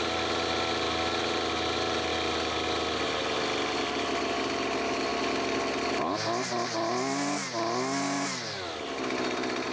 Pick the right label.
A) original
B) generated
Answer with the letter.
A